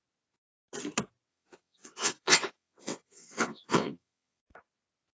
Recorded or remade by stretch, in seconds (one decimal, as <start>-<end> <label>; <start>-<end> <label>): 0.0-1.3 recorded; 1.3-4.4 remade; 4.4-5.2 recorded